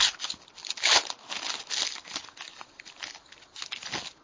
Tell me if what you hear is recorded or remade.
recorded